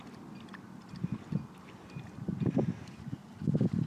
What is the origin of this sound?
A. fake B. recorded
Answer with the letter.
B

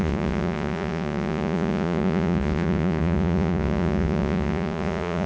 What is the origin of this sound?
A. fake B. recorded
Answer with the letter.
A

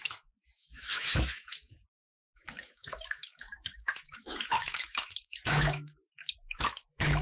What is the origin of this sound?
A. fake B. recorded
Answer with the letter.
A